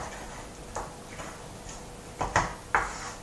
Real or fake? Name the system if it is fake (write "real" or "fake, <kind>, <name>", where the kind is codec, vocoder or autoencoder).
real